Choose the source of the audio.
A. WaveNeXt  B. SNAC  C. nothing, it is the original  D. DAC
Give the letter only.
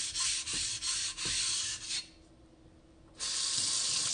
C